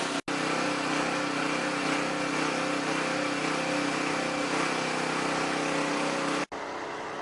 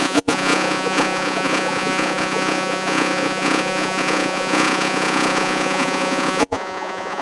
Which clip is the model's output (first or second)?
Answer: second